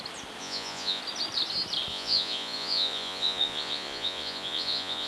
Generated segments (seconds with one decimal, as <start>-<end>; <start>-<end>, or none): 0.4-1.0; 1.9-5.1